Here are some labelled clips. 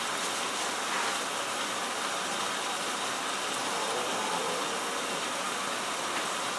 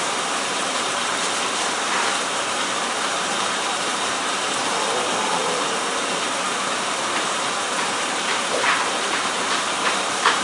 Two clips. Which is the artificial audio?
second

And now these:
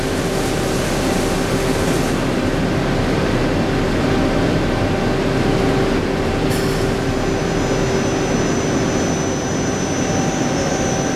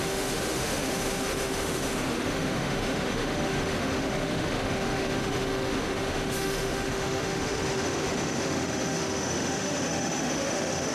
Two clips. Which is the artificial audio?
second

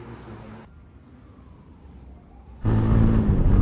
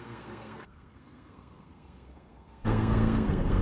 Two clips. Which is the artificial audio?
second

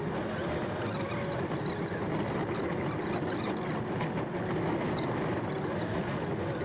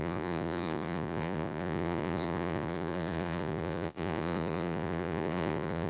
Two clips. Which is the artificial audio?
second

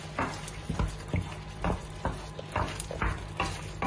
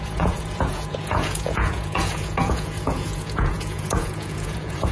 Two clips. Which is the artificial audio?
second